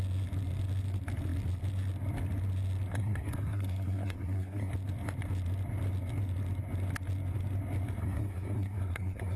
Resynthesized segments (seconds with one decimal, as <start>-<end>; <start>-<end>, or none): 2.9-4.7; 8.0-9.4